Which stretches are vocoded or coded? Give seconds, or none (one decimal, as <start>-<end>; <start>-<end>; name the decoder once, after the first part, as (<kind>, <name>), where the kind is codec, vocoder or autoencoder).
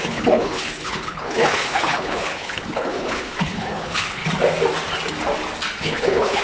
0.0-4.2 (codec, HILCodec); 5.8-6.4